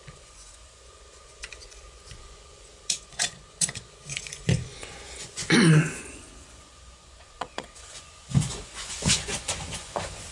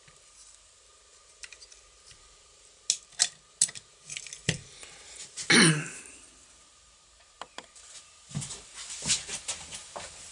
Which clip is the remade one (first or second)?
first